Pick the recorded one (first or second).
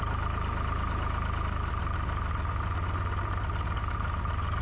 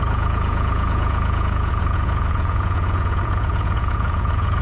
first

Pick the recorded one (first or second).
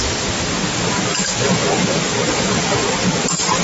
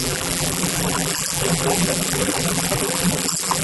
first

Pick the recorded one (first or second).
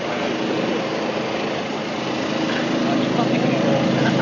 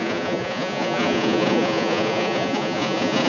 first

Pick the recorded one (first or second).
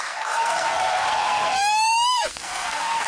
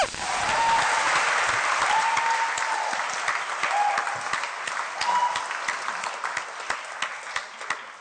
second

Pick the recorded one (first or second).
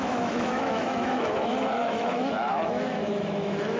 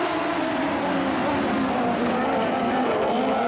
second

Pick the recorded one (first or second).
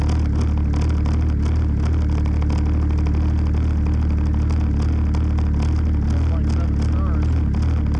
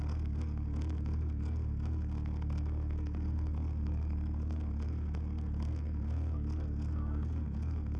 first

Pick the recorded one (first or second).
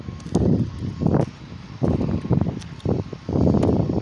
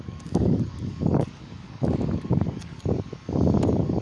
first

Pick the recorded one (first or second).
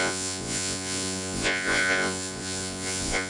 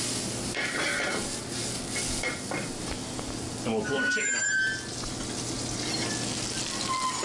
second